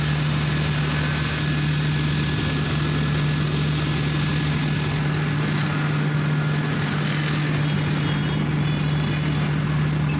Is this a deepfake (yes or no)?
no